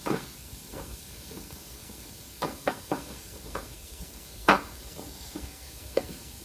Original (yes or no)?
no